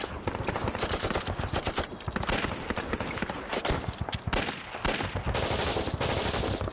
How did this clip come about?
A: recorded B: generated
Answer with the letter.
A